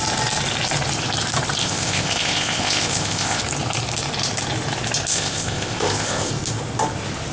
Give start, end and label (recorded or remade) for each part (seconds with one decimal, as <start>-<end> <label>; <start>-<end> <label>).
0.0-1.6 recorded; 1.6-3.4 remade; 3.4-5.1 recorded; 5.1-6.3 remade; 6.3-7.3 recorded

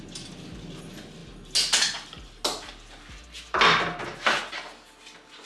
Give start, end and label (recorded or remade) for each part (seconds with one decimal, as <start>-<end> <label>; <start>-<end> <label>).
0.0-5.5 recorded

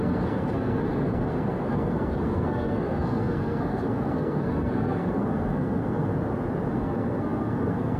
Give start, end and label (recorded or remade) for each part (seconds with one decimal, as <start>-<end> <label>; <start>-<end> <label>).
0.0-6.1 remade; 6.1-6.7 recorded; 6.7-8.0 remade